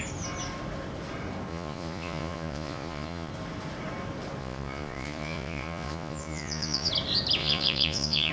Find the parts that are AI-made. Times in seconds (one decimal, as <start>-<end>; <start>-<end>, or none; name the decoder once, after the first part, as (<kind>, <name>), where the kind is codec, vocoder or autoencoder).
1.5-3.3 (vocoder, Vocos); 4.4-6.9; 7.4-8.3